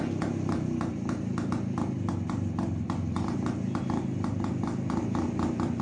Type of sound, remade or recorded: recorded